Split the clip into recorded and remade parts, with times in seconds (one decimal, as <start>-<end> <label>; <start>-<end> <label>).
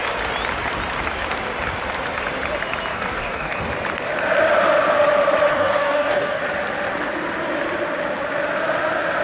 0.0-2.9 recorded; 2.9-3.6 remade; 3.6-5.5 recorded; 5.5-6.4 remade; 6.4-9.2 recorded